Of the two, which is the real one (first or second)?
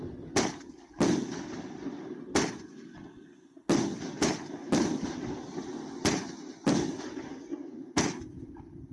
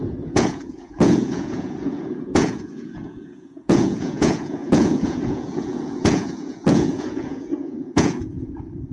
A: first